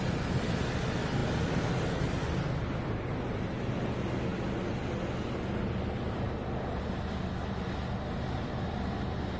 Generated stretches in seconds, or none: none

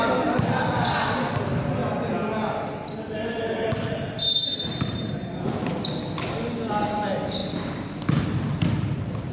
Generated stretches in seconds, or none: none

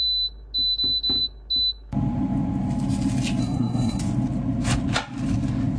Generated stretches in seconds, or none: 3.4-4.0 (codec, SNAC)

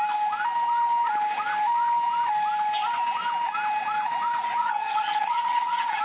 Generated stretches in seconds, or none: 4.6-6.0 (vocoder, HiFi-GAN)